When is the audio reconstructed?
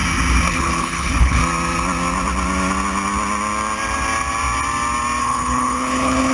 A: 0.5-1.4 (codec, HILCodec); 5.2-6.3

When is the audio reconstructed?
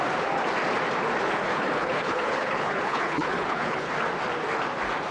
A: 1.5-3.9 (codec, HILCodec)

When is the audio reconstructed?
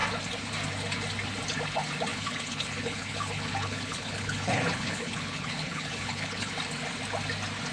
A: 2.1-6.5 (codec, HILCodec)